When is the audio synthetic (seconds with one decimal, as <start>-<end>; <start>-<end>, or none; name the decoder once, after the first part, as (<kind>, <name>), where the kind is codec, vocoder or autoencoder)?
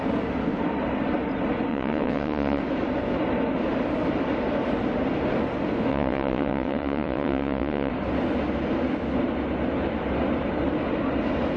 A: 1.7-2.6 (vocoder, WaveNeXt); 5.9-7.9